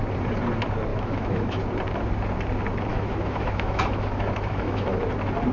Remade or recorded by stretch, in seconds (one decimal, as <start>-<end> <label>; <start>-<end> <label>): 0.0-0.9 recorded; 0.9-1.6 remade; 1.6-2.9 recorded; 2.9-5.0 remade; 5.0-5.5 recorded